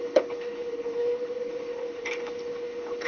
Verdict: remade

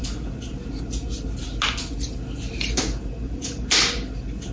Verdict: recorded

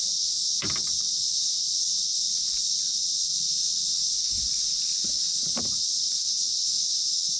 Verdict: recorded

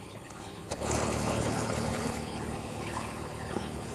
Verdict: remade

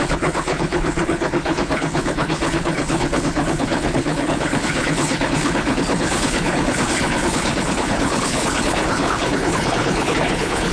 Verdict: remade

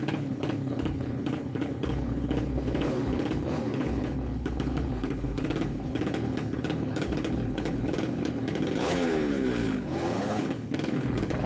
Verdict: remade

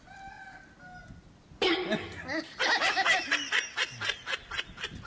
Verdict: recorded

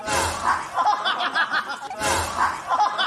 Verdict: recorded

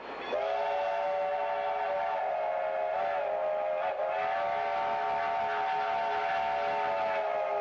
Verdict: recorded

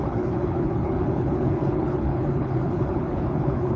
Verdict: remade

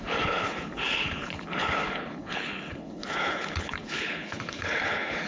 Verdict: remade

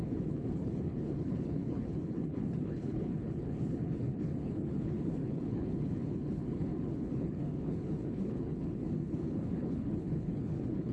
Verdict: remade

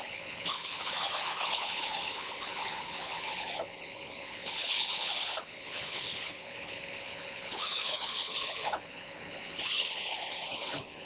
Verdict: remade